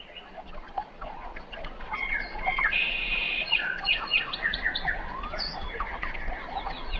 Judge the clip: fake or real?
fake